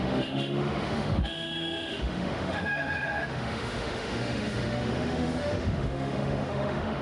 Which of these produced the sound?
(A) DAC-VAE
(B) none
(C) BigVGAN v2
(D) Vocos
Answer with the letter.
A